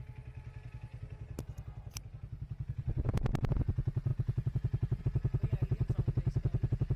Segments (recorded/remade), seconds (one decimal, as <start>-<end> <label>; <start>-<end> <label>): 0.0-4.1 recorded; 4.1-5.0 remade; 5.0-7.0 recorded